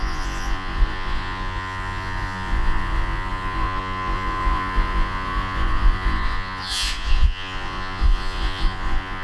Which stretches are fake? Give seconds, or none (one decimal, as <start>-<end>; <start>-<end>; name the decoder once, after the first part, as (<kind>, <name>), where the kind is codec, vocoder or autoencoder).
0.0-9.2 (vocoder, Vocos)